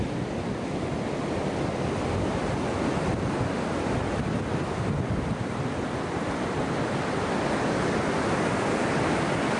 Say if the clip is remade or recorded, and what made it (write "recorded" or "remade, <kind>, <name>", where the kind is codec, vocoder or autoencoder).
recorded